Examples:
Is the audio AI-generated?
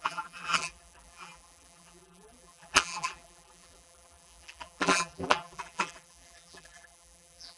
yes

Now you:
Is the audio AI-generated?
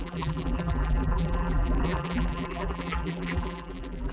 yes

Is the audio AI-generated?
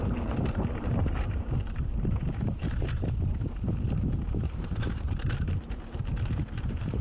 yes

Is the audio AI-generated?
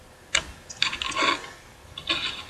no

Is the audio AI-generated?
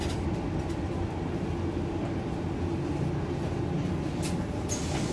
no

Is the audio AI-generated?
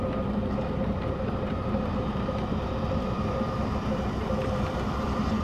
yes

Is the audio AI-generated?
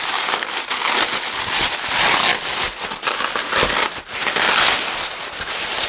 no